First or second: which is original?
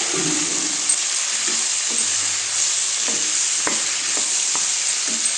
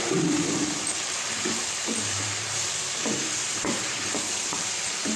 first